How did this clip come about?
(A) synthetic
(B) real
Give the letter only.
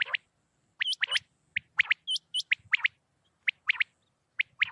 B